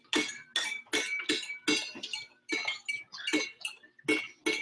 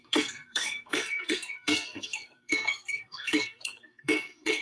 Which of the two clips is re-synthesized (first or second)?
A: second